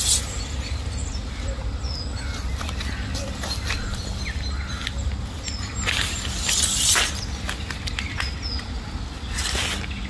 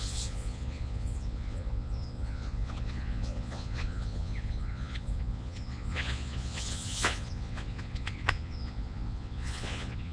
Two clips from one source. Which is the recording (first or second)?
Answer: first